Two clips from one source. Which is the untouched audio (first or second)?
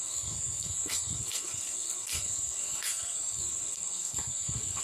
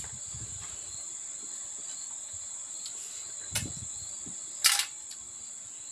second